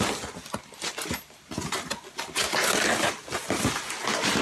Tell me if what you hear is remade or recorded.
recorded